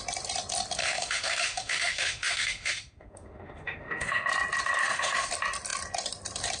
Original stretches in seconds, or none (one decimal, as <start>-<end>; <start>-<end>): 0.0-0.8; 4.3-4.8; 5.3-6.6